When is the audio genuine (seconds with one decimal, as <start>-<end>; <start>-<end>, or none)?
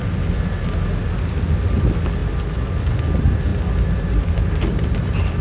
0.0-2.2; 3.0-5.4